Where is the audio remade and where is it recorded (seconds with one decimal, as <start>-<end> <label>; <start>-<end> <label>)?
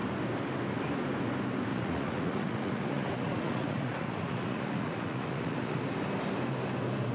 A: 0.0-1.7 recorded; 1.7-5.8 remade; 5.8-7.1 recorded